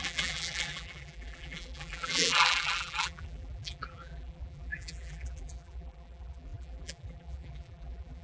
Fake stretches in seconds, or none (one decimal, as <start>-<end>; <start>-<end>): 0.0-8.2